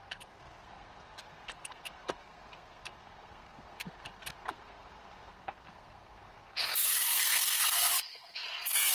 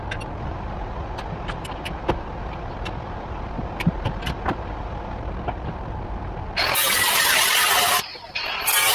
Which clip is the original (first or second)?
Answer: second